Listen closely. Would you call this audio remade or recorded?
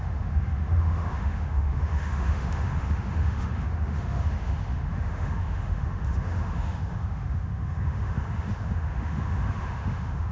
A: remade